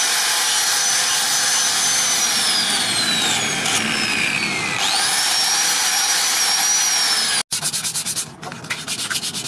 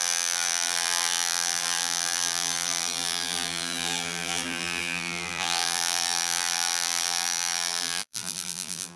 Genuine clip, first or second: first